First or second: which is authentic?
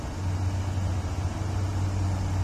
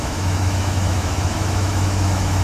first